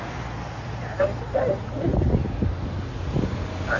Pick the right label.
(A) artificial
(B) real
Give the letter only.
B